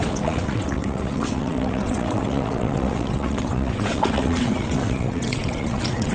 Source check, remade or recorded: remade